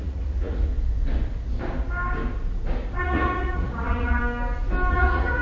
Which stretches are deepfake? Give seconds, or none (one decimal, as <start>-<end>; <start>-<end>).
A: 0.0-0.7; 3.0-4.2; 4.9-5.4